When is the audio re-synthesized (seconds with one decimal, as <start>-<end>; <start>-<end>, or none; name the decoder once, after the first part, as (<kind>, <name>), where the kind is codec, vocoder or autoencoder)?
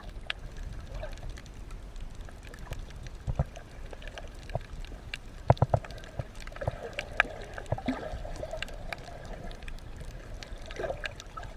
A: 8.2-9.1 (vocoder, BigVGAN v2)